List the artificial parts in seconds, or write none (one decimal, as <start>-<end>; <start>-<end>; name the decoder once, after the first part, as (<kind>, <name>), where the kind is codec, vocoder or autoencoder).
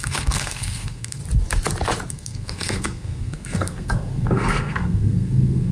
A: 0.0-1.2 (codec, SNAC); 2.1-5.7